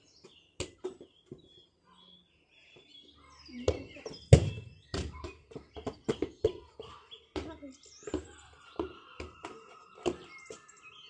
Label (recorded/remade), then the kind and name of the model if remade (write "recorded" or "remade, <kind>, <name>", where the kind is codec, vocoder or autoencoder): recorded